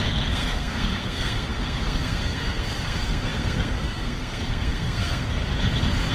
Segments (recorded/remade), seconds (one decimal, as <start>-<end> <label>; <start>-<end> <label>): 0.0-5.4 remade; 5.4-6.1 recorded